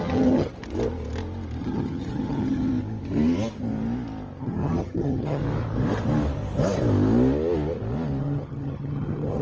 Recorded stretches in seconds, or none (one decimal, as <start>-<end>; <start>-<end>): 0.5-1.6; 2.7-4.4; 5.4-8.2